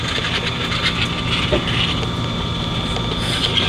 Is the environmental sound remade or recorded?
recorded